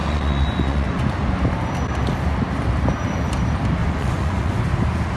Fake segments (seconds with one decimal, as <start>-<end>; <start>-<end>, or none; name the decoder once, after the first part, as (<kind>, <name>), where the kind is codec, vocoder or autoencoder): 0.0-1.0 (vocoder, Vocos); 3.8-4.6